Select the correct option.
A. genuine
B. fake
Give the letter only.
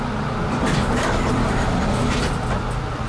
A